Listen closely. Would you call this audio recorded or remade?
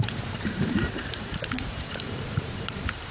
remade